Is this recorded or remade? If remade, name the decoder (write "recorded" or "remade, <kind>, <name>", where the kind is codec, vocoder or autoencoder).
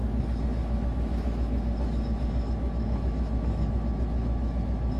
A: remade, autoencoder, DAC-VAE